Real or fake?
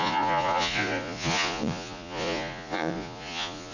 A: fake